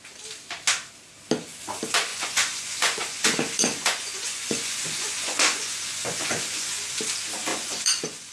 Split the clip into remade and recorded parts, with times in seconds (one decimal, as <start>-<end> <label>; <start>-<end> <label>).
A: 0.0-2.1 recorded; 2.1-7.0 remade; 7.0-7.5 recorded; 7.5-8.3 remade